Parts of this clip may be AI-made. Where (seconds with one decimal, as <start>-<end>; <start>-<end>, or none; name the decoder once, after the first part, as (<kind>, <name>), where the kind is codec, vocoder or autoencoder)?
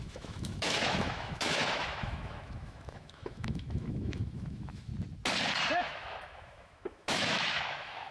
0.0-4.9 (autoencoder, DAC-VAE); 5.8-8.1